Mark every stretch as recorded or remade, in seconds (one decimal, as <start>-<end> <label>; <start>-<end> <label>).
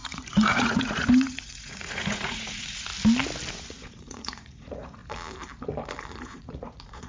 0.0-2.9 remade; 2.9-3.5 recorded; 3.5-5.0 remade; 5.0-6.2 recorded; 6.2-7.1 remade